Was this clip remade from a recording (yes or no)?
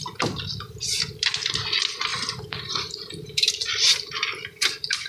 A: yes